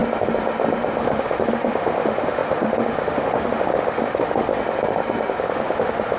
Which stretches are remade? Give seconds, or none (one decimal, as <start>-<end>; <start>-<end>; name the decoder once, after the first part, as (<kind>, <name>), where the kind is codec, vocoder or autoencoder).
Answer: 1.0-4.6 (autoencoder, DAC-VAE); 5.4-6.2